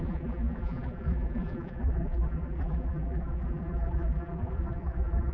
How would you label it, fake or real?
fake